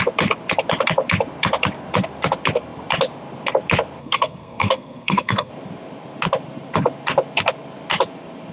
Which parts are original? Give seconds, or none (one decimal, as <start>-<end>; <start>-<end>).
0.0-4.0; 5.5-8.5